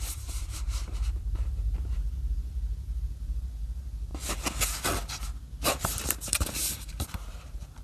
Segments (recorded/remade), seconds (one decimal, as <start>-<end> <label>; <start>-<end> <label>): 0.0-4.1 remade; 4.1-5.7 recorded; 5.7-7.8 remade